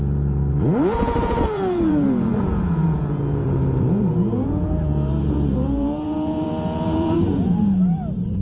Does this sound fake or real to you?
fake